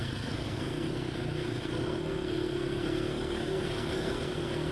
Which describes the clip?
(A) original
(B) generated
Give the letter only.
B